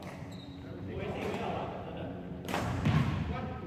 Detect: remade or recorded remade